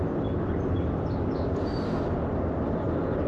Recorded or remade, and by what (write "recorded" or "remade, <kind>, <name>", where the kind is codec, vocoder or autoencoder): recorded